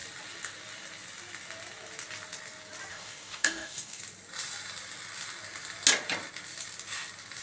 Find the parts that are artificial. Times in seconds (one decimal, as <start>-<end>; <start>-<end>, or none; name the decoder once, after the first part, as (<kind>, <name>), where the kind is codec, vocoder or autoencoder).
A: 2.9-4.0 (codec, DAC)

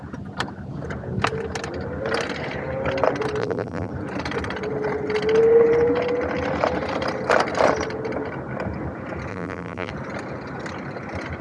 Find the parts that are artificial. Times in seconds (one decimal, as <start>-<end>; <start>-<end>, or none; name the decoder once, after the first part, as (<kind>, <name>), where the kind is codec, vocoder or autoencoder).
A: 3.4-3.9 (vocoder, BigVGAN v2); 9.3-9.9

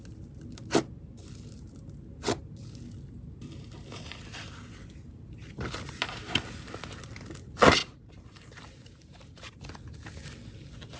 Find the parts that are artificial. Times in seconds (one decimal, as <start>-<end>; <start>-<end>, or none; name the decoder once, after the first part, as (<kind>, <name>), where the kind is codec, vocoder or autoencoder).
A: 7.8-9.6 (vocoder, BigVGAN v2)

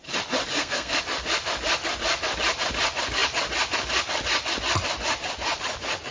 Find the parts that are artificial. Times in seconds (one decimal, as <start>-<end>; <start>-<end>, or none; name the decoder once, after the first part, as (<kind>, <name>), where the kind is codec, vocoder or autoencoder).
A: 0.5-1.0 (codec, SNAC)

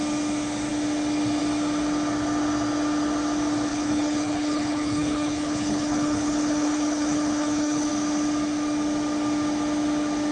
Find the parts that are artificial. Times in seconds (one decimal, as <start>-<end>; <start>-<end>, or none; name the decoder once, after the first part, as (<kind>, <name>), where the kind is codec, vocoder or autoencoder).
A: 3.7-7.9 (codec, HILCodec)

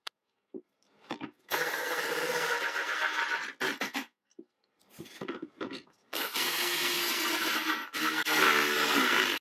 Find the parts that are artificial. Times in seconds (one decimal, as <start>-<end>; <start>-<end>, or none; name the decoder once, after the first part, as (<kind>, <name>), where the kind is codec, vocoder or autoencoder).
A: 0.0-3.2 (codec, SNAC); 3.8-9.4

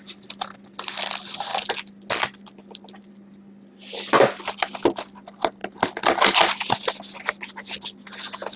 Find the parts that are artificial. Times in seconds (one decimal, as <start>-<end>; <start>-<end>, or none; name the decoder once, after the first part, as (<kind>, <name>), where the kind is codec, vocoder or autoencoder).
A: none

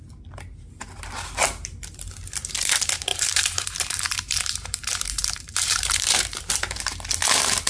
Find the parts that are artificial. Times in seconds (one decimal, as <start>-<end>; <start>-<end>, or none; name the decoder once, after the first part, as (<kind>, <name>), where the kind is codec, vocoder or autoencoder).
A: 3.1-6.8 (vocoder, BigVGAN v2)